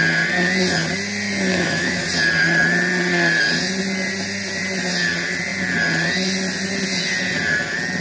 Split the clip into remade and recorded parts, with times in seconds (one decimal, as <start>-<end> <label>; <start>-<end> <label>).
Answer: 0.0-1.5 recorded; 1.5-2.0 remade; 2.0-8.0 recorded